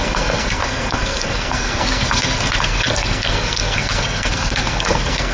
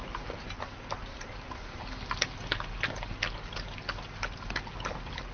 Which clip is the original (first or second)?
second